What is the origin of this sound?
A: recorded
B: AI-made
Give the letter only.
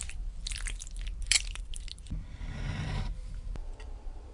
B